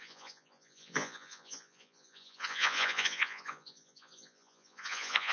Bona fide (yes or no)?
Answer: no